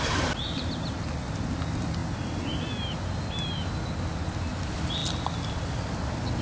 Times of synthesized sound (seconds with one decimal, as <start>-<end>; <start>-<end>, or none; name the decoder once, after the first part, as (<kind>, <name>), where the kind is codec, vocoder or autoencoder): none